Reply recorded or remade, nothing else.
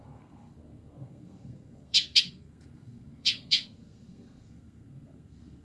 remade